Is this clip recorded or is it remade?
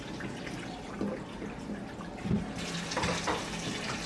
recorded